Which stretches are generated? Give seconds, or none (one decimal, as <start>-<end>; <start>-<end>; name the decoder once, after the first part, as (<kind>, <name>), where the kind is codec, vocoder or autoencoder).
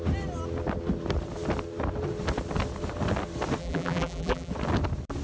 3.6-4.5 (vocoder, BigVGAN v2)